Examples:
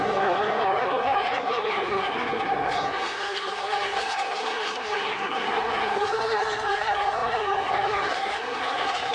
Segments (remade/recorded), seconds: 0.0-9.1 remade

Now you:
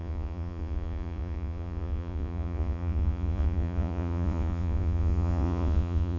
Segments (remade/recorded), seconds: 0.0-6.2 remade

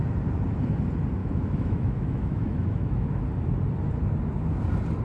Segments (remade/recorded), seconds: 0.0-1.2 recorded; 1.2-3.2 remade; 3.2-5.0 recorded

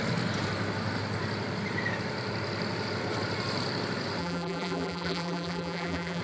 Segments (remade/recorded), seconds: 0.0-4.2 recorded; 4.2-6.2 remade

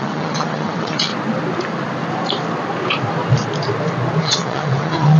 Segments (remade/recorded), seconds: 0.0-1.1 remade; 1.1-4.2 recorded; 4.2-5.2 remade

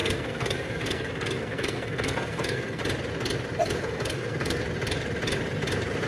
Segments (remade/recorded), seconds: 0.0-2.8 remade; 2.8-3.8 recorded; 3.8-4.6 remade; 4.6-6.1 recorded